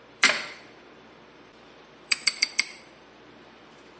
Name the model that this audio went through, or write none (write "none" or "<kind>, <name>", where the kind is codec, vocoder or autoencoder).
vocoder, BigVGAN v2